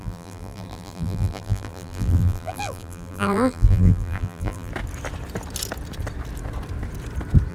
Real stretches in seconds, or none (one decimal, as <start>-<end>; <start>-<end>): 4.7-7.5